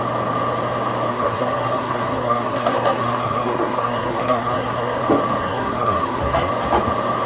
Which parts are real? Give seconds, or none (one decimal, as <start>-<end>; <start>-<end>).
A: 0.0-1.1; 5.0-5.4; 6.5-7.3